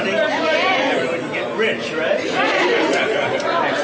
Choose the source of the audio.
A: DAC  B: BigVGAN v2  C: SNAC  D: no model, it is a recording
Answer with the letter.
D